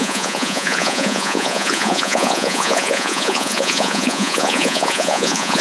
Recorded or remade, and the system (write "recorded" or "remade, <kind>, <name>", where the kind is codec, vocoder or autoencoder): remade, vocoder, Vocos